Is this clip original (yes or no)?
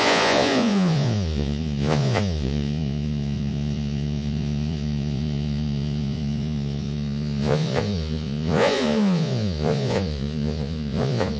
no